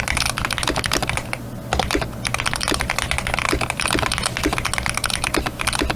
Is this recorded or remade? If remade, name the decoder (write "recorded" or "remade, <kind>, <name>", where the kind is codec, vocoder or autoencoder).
recorded